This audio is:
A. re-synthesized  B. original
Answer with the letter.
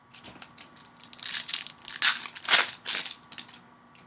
B